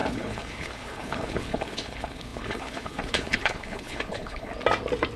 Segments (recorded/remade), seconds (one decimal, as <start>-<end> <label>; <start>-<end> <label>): 0.0-4.5 remade; 4.5-5.2 recorded